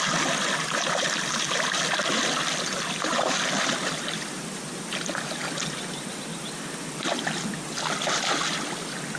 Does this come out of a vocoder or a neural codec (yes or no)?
no